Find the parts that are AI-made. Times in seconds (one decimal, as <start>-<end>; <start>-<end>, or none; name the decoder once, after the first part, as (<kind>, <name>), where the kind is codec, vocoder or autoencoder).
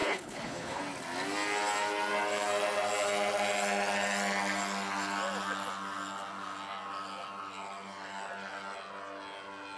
0.0-0.8 (codec, HILCodec)